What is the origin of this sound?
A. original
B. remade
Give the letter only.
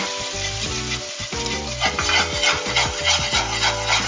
A